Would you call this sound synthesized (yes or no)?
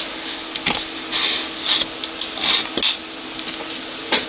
no